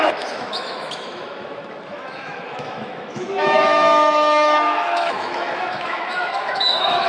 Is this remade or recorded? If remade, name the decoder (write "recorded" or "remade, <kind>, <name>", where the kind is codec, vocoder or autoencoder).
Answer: remade, autoencoder, DAC-VAE